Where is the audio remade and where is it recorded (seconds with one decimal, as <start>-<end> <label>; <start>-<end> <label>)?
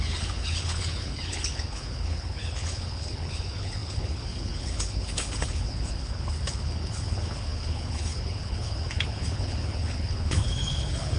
0.0-11.2 remade